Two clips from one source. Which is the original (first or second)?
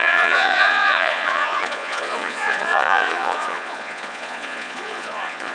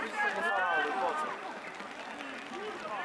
second